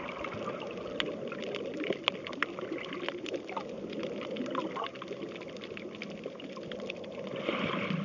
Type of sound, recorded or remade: recorded